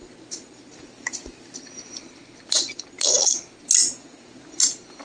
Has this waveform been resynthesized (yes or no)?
no